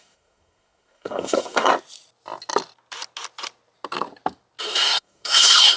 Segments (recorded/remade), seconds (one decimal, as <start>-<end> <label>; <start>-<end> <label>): 0.0-1.7 remade; 1.7-4.6 recorded; 4.6-5.8 remade